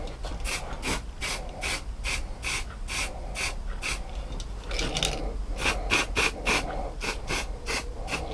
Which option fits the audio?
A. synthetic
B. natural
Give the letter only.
B